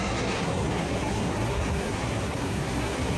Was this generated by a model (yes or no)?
yes